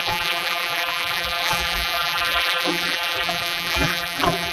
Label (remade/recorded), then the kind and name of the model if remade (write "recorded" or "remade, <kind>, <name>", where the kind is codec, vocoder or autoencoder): remade, vocoder, BigVGAN v2